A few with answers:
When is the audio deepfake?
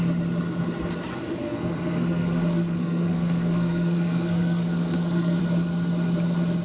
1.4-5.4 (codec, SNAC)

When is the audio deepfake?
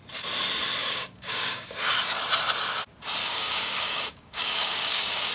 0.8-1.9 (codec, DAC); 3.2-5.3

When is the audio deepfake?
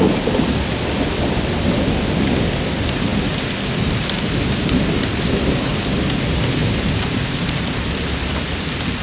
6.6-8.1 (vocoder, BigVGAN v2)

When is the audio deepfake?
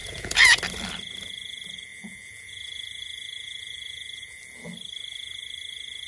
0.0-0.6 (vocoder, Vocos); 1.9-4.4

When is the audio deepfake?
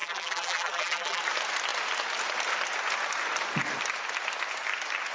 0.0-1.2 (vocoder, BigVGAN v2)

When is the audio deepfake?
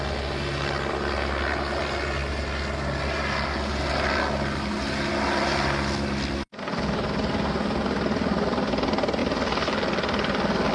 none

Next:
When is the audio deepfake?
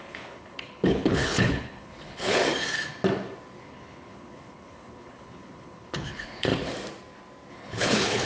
0.0-2.4 (codec, HILCodec); 3.6-6.5; 7.5-8.3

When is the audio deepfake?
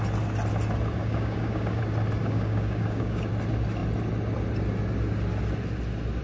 1.0-1.8 (codec, DAC); 2.2-3.3